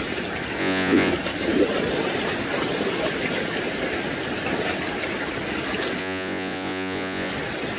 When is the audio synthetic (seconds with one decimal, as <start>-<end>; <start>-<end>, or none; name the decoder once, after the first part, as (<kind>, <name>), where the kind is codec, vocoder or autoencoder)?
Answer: 0.6-1.1 (vocoder, Vocos); 6.0-7.3